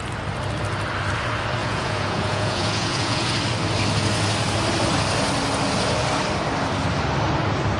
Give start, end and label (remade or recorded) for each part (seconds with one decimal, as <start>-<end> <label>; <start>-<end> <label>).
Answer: 0.0-1.6 recorded; 1.6-3.3 remade; 3.3-7.8 recorded